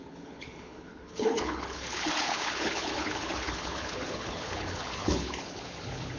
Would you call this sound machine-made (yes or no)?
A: yes